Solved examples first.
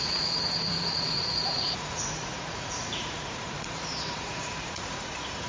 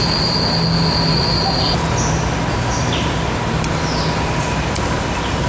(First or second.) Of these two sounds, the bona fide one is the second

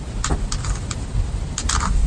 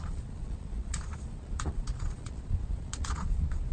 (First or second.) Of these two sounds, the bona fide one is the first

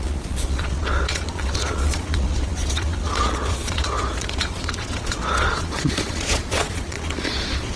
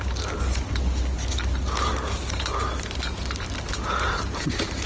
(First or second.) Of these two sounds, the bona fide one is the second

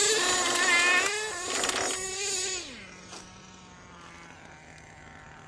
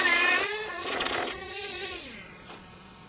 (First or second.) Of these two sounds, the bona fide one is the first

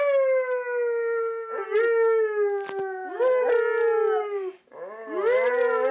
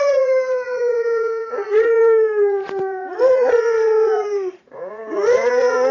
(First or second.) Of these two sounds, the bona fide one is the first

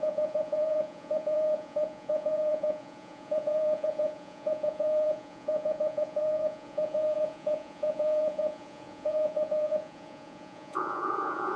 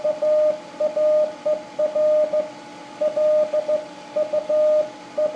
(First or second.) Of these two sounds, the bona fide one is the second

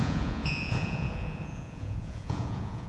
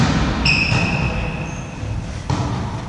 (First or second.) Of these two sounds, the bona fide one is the second